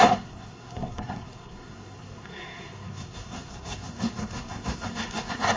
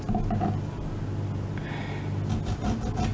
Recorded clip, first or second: second